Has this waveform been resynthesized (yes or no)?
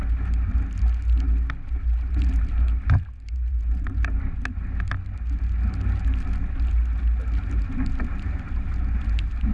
no